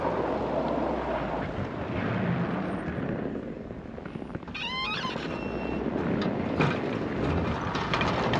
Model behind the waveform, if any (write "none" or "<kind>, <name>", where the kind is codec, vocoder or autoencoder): none